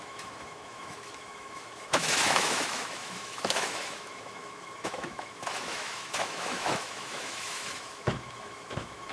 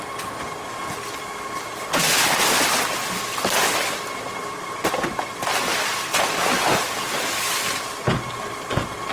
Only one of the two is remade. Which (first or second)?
first